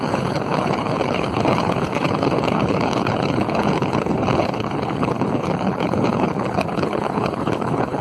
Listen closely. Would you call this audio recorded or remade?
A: remade